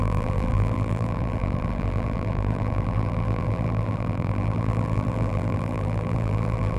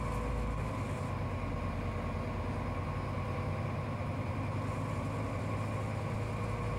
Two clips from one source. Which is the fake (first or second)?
first